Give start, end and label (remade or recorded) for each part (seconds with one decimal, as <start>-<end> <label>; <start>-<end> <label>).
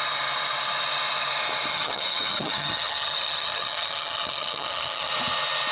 0.0-1.7 recorded; 1.7-5.1 remade; 5.1-5.7 recorded